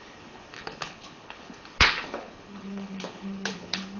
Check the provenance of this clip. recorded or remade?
remade